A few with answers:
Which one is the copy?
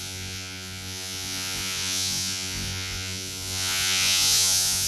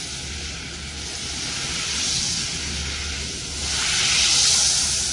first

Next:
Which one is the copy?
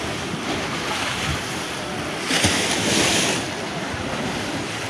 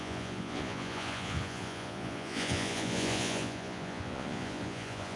second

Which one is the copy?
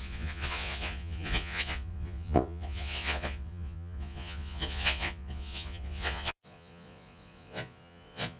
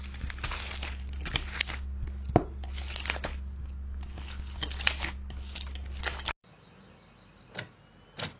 first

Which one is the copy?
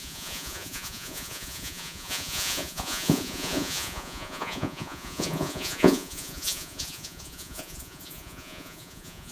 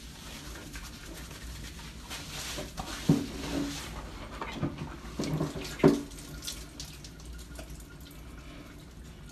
first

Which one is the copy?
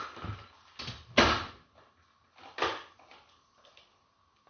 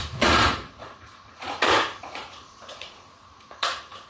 second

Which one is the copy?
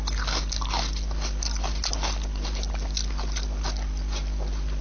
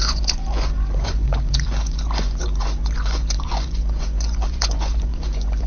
second